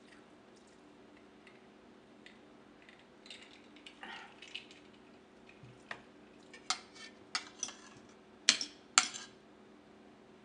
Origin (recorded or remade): recorded